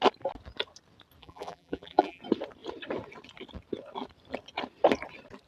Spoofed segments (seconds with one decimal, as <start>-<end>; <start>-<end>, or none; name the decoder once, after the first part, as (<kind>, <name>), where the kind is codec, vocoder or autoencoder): 1.2-2.2 (vocoder, BigVGAN v2)